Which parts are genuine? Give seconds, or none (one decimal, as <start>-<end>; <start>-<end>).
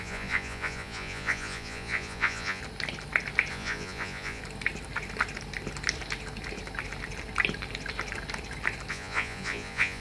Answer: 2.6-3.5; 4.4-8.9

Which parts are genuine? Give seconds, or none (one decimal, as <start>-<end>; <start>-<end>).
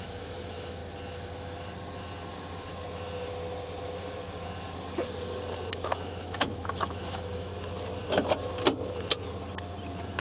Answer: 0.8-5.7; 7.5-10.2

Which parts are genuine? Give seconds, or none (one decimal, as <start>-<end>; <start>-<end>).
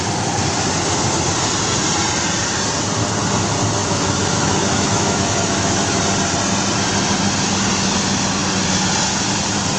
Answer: 0.0-3.8; 6.0-9.8